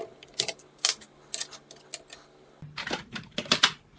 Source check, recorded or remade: recorded